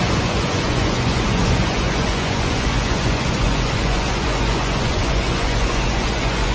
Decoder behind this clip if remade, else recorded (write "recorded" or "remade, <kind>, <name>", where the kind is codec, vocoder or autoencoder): remade, vocoder, Vocos